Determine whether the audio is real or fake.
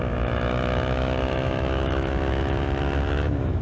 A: fake